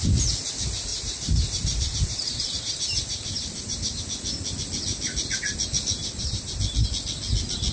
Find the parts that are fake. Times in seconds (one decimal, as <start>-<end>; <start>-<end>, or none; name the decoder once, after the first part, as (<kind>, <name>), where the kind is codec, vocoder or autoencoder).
0.9-4.0 (vocoder, BigVGAN v2); 6.0-6.6